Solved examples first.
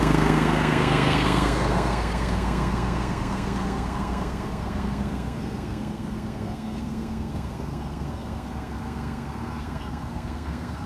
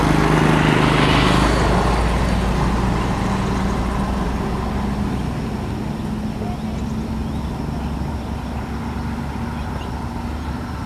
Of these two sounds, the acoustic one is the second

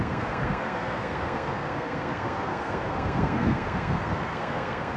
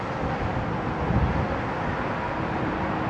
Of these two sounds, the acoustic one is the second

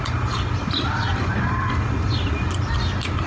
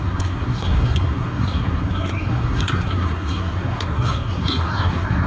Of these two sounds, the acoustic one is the first